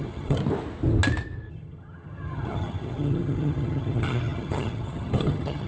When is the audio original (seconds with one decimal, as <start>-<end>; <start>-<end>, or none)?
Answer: 0.4-1.5